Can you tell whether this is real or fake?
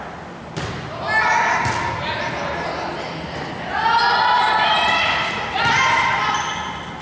real